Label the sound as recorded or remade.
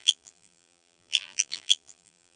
remade